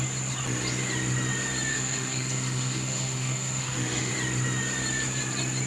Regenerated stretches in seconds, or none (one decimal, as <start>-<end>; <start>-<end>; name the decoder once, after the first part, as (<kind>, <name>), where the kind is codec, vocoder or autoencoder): 1.7-4.1 (autoencoder, DAC-VAE)

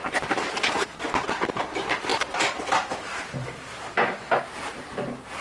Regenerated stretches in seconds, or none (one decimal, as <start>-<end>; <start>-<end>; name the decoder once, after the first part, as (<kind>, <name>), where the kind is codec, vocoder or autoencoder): 0.0-1.6 (vocoder, BigVGAN v2); 2.1-5.4

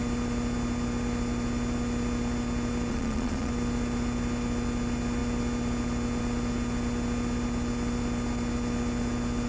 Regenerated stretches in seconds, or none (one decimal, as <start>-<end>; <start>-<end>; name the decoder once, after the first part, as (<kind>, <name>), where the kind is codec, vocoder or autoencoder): 2.9-3.5 (vocoder, Vocos)

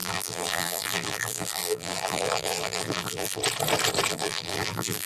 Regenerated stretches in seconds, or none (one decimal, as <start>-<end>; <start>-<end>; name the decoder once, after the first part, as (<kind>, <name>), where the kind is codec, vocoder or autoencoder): 0.0-3.4 (vocoder, BigVGAN v2); 4.1-5.1

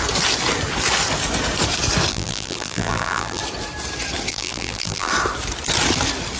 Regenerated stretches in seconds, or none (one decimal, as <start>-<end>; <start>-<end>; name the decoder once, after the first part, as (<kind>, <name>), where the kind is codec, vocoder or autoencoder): 2.1-3.4 (vocoder, BigVGAN v2); 4.3-5.1

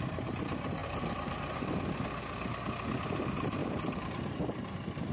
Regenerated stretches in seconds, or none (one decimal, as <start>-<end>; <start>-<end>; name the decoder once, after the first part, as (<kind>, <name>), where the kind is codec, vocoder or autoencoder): 0.8-1.7 (vocoder, BigVGAN v2); 3.6-5.1

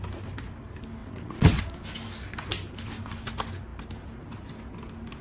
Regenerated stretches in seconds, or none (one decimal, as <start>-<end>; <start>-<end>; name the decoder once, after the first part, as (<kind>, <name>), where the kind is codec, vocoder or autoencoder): 1.0-1.6 (vocoder, WaveNeXt)

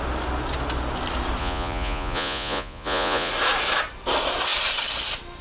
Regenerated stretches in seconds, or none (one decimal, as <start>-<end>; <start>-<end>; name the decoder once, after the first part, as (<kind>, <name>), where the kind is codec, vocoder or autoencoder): 1.4-3.3 (vocoder, Vocos)